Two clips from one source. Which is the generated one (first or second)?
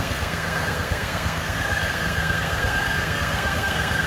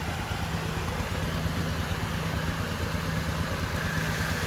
first